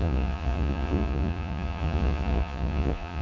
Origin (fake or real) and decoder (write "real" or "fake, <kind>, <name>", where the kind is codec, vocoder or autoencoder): fake, vocoder, Vocos